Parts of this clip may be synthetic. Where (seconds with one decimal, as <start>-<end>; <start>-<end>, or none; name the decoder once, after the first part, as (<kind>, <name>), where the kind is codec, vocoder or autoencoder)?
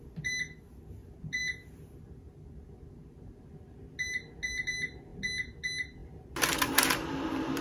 6.0-7.6 (vocoder, BigVGAN v2)